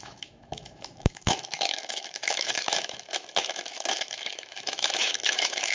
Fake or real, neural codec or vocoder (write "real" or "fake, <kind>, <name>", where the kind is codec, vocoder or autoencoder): fake, autoencoder, DAC-VAE